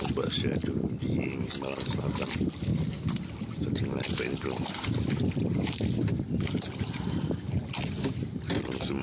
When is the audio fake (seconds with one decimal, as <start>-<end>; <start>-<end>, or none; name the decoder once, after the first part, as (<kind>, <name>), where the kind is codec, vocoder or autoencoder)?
2.7-4.9 (vocoder, BigVGAN v2)